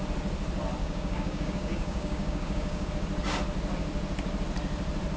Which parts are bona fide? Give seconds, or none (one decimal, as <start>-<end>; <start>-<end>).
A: 0.0-0.8; 2.9-5.2